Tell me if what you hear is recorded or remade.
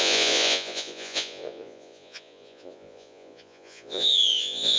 remade